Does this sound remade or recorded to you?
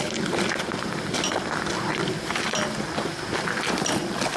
remade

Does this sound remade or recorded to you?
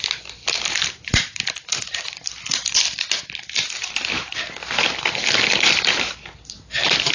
recorded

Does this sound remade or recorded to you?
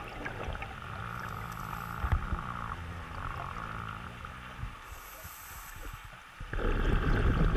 recorded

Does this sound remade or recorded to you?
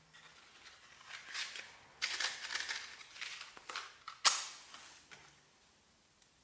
recorded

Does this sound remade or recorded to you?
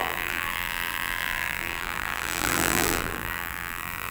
remade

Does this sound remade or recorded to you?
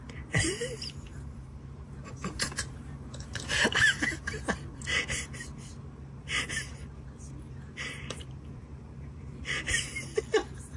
remade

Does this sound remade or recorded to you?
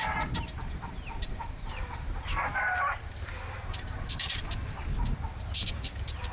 remade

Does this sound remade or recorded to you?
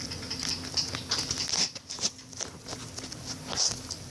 recorded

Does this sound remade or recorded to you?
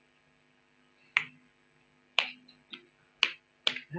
recorded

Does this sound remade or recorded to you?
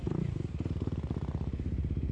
remade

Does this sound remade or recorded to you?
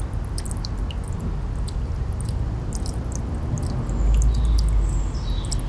recorded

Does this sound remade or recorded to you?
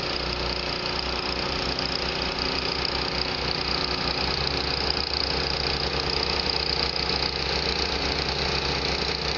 recorded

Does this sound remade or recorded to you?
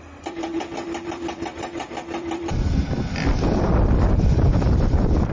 remade